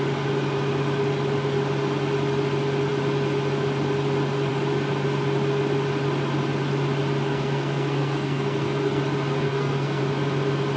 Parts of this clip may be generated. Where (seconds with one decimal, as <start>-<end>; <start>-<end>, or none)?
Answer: 7.3-9.0; 9.4-10.0